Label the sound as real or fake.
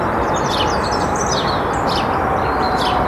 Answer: real